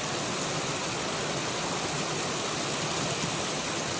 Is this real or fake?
real